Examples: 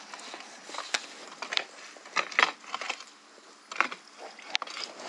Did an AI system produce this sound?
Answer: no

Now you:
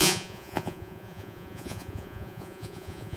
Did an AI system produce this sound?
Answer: yes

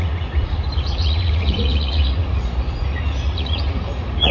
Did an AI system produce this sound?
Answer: yes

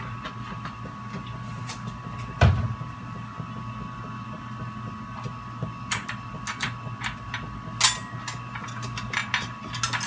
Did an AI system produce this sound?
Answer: no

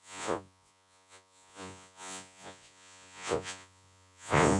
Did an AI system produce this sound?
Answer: yes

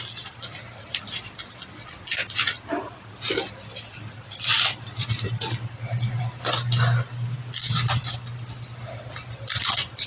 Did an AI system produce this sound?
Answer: no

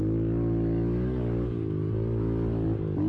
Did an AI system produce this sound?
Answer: no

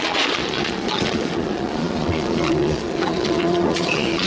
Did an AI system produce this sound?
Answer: yes